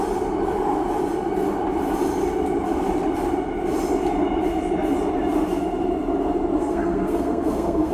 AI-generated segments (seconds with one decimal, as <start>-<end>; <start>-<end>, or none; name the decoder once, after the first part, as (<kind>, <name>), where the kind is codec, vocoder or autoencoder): 6.6-7.9 (codec, SNAC)